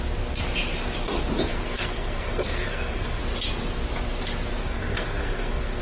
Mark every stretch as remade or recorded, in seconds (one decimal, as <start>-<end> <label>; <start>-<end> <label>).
0.0-1.5 recorded; 1.5-3.2 remade; 3.2-4.6 recorded; 4.6-5.8 remade